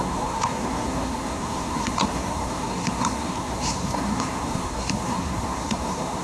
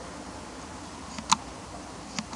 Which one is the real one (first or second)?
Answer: second